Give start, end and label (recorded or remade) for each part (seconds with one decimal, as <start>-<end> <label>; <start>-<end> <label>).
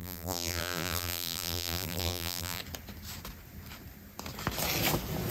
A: 0.0-2.6 remade; 2.6-5.3 recorded